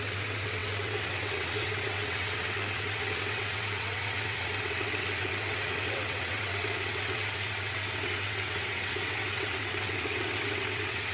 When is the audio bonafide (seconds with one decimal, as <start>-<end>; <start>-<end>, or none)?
none